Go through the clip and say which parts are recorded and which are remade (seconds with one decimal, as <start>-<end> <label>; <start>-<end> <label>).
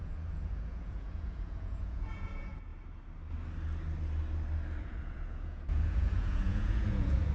0.0-2.7 remade; 2.7-4.8 recorded; 4.8-7.3 remade